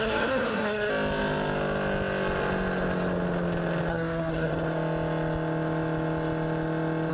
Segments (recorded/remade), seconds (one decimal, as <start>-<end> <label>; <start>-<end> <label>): 0.0-0.9 remade; 0.9-3.9 recorded; 3.9-4.5 remade; 4.5-7.1 recorded